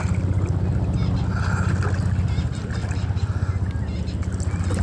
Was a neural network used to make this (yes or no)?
no